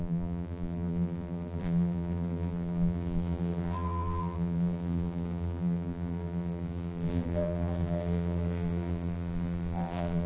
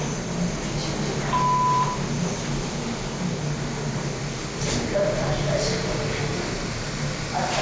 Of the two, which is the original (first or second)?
second